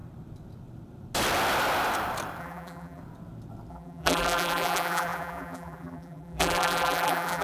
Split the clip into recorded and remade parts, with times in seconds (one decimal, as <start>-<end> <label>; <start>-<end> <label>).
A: 0.0-2.4 recorded; 2.4-3.0 remade; 3.0-3.7 recorded; 3.7-7.4 remade